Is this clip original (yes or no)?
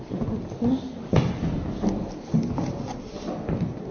yes